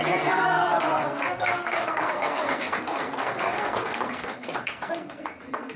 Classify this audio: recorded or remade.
remade